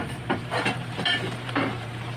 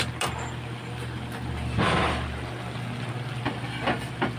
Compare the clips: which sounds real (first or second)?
second